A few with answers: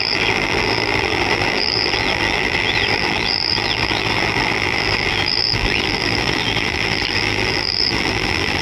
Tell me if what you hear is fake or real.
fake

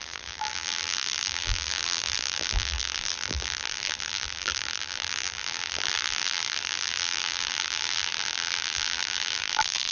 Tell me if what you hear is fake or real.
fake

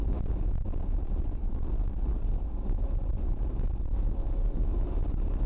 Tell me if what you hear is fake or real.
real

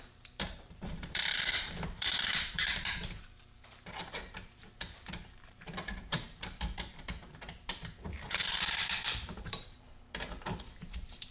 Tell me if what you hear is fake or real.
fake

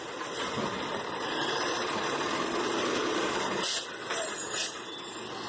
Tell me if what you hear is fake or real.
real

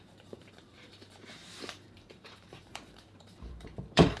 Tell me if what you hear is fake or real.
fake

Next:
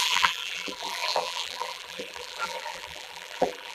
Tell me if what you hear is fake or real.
fake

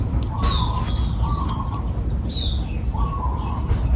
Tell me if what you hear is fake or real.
real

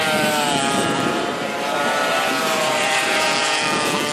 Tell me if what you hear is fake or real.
fake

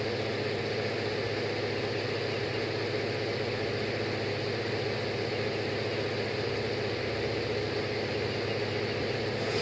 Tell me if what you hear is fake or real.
real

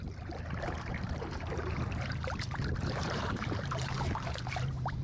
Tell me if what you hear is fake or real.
fake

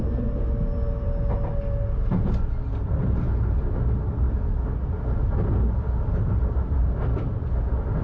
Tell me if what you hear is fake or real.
real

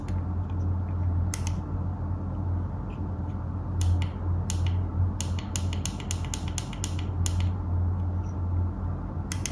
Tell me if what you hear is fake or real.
real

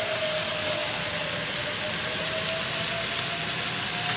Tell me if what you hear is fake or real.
real